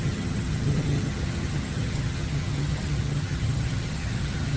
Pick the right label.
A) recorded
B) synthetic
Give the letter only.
B